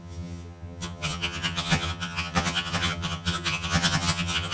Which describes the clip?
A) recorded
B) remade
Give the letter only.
B